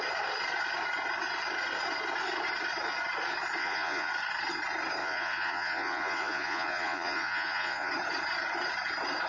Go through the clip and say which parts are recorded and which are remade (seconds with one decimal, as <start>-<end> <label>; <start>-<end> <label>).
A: 0.0-3.6 recorded; 3.6-4.1 remade; 4.1-5.0 recorded; 5.0-7.9 remade; 7.9-9.3 recorded